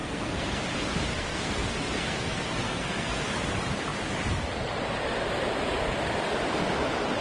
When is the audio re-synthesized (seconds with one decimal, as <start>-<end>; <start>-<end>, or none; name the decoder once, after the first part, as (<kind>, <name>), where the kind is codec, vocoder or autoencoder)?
0.0-0.6 (codec, SNAC); 1.1-3.2